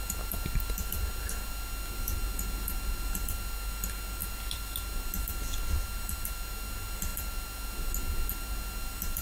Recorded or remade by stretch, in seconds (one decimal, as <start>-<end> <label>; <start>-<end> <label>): 0.0-9.2 recorded

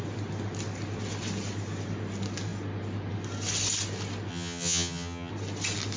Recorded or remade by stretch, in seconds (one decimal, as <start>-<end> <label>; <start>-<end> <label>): 0.0-4.3 recorded; 4.3-5.3 remade; 5.3-6.0 recorded

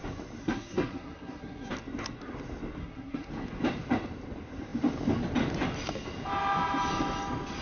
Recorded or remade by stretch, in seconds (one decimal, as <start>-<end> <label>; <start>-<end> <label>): 0.0-0.4 recorded; 0.4-1.7 remade; 1.7-2.8 recorded; 2.8-3.3 remade; 3.3-7.6 recorded

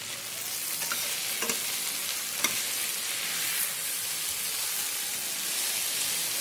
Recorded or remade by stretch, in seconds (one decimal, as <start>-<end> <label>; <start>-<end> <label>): 0.0-6.4 recorded

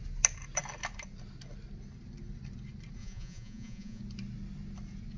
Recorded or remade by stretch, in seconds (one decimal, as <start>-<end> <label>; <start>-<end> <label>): 0.0-3.0 recorded; 3.0-4.0 remade; 4.0-5.2 recorded

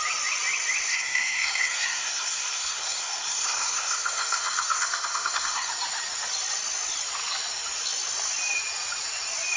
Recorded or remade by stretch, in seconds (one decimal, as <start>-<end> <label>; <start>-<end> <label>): 0.0-0.9 recorded; 0.9-5.7 remade; 5.7-9.6 recorded